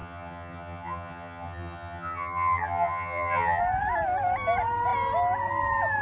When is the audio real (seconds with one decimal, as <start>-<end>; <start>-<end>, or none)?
3.6-6.0